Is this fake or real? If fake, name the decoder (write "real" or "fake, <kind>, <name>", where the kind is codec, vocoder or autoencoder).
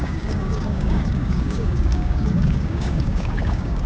fake, codec, DAC